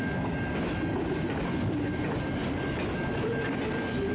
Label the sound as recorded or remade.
recorded